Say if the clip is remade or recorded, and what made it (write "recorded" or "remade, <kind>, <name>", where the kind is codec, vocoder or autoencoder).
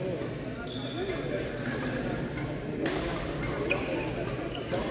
recorded